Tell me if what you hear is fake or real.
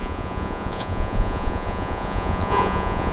fake